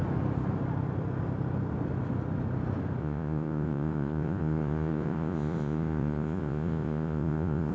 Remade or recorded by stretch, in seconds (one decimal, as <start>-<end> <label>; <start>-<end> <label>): 0.0-3.0 recorded; 3.0-7.7 remade